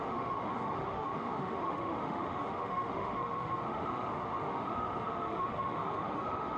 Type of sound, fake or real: fake